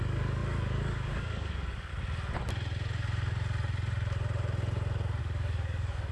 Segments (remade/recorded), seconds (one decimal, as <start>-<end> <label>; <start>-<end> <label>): 0.0-1.9 remade; 1.9-5.2 recorded; 5.2-6.1 remade